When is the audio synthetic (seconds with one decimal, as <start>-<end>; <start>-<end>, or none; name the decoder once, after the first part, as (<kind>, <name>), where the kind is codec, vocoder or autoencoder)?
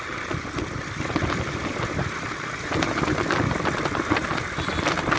none